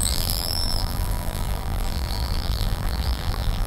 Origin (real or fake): fake